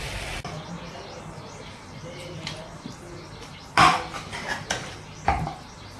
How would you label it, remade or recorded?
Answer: recorded